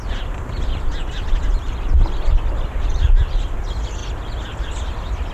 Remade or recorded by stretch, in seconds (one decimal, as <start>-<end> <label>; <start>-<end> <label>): 0.0-5.3 remade